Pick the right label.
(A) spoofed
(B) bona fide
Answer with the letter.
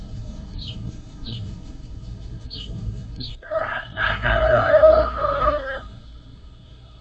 A